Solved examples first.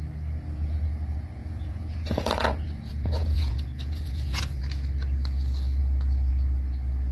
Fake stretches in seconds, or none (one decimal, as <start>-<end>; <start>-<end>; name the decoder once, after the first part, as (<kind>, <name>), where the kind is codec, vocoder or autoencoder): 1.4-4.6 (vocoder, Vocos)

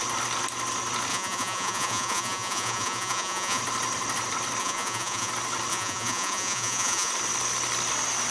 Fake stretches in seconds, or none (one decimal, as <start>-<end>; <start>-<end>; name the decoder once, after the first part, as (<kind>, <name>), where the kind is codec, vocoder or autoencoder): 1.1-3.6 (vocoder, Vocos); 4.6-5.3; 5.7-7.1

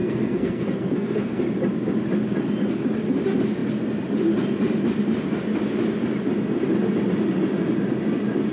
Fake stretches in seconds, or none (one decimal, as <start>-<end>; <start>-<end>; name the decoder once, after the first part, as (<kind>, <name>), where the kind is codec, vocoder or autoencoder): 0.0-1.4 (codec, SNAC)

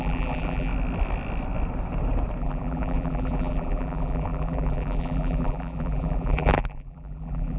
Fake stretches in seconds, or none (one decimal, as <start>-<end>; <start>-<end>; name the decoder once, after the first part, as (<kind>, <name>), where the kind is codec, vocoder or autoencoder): 0.0-0.7 (vocoder, BigVGAN v2); 2.4-7.6

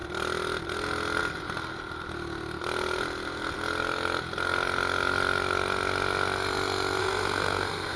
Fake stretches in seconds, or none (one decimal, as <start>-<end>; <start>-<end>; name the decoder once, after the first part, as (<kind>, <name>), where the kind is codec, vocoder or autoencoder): 7.0-8.0 (codec, SNAC)

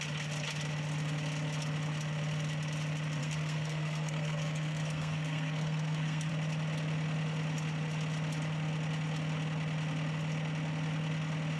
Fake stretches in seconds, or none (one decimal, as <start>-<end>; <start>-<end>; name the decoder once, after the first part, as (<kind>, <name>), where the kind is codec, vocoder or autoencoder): 3.2-6.3 (codec, SNAC)